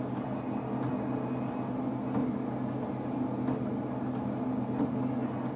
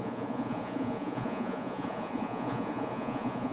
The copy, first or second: second